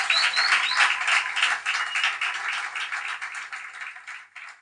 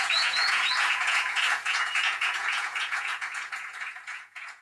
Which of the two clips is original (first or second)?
first